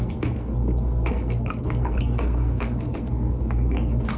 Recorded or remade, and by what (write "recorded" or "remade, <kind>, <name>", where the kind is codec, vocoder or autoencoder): remade, codec, SNAC